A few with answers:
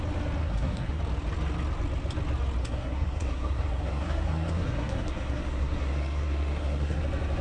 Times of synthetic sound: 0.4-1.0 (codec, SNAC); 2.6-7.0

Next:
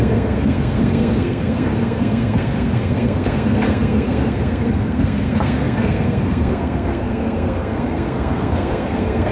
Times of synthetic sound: 0.0-9.3 (codec, SNAC)

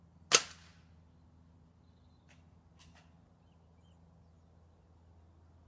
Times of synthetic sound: none

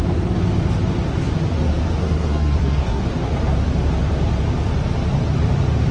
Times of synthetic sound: 2.0-3.0 (codec, SNAC)

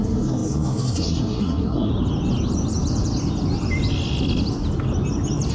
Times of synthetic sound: 0.0-1.9 (codec, SNAC)

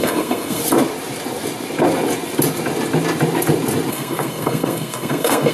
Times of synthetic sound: 0.0-0.6 (codec, SNAC); 3.9-5.5

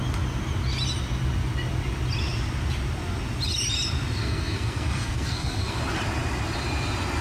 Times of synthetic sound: 4.2-5.8 (codec, SNAC)

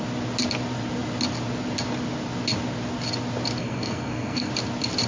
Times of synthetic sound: 3.6-4.5 (codec, SNAC)